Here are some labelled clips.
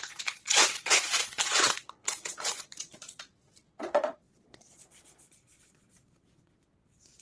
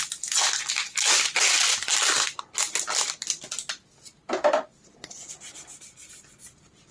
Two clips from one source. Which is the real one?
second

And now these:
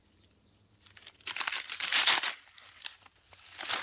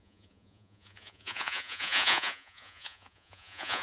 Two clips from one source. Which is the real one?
first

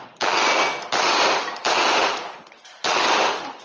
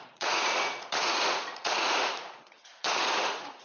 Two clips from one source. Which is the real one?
first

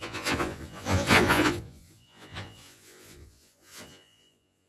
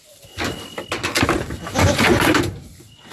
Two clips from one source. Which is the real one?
second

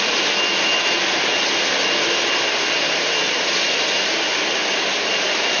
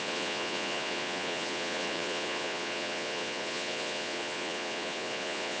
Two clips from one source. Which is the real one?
first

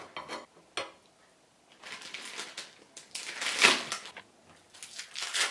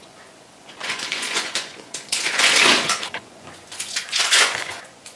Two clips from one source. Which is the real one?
first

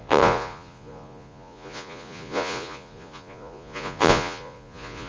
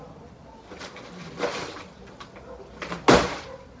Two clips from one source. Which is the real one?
second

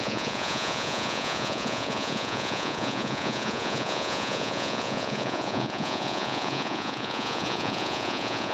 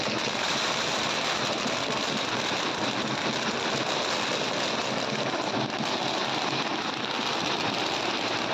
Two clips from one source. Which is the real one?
second